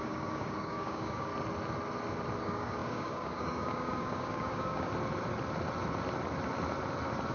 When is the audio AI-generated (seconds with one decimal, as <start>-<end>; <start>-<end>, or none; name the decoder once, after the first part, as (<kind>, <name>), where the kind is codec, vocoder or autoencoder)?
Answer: 0.0-1.3 (codec, DAC); 2.4-4.9